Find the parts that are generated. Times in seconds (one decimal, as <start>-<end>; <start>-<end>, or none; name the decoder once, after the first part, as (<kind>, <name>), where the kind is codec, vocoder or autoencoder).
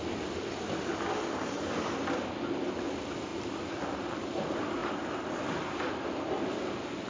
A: none